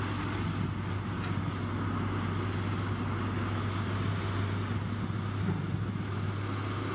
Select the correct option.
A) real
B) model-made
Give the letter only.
A